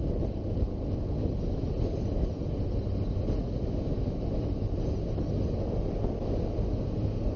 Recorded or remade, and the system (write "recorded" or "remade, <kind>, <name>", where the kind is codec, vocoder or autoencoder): recorded